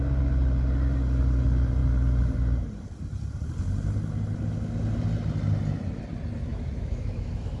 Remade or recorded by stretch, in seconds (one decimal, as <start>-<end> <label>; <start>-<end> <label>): 0.0-6.5 recorded; 6.5-7.6 remade